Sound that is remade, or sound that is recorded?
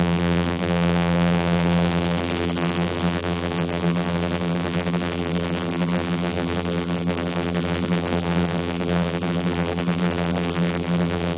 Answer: remade